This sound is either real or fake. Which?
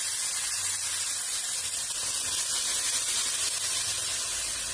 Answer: real